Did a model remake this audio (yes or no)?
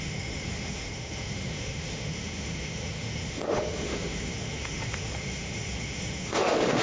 yes